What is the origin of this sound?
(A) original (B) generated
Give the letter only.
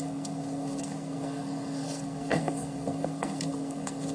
B